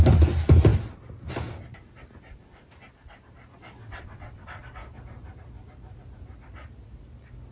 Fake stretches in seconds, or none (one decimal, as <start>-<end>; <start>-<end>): 3.8-4.6